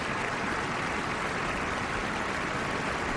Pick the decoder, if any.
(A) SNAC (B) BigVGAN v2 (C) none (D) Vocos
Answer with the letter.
C